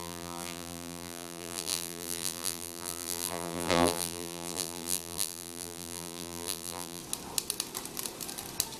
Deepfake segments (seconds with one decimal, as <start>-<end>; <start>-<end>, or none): 0.0-7.0